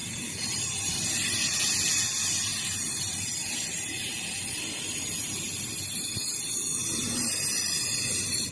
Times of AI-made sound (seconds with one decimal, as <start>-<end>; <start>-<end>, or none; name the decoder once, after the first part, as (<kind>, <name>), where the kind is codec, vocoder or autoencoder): 0.0-0.9 (vocoder, BigVGAN v2); 2.5-4.6; 6.6-7.2

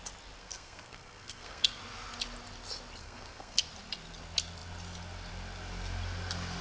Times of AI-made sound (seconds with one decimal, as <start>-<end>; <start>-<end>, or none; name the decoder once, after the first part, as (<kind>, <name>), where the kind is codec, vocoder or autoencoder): 0.4-1.8 (codec, SNAC); 3.0-3.6

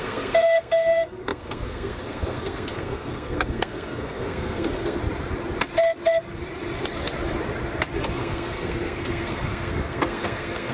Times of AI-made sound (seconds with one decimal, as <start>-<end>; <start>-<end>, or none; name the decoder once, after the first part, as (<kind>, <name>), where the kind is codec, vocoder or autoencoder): 0.0-5.0 (codec, SNAC); 8.2-10.7